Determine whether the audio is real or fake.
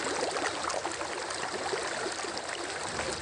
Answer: real